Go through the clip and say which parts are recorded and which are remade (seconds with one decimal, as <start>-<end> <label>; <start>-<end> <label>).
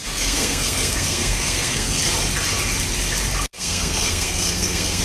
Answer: 0.0-2.0 remade; 2.0-3.5 recorded; 3.5-5.0 remade